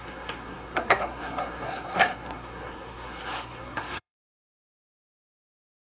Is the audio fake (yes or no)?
yes